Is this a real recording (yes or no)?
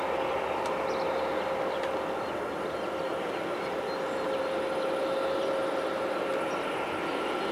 yes